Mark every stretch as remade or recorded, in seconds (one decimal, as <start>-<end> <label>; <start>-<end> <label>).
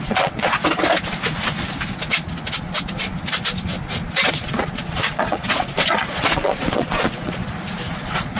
0.0-0.6 remade; 0.6-4.3 recorded; 4.3-7.4 remade; 7.4-7.9 recorded; 7.9-8.4 remade